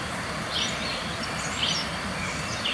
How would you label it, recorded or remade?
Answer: recorded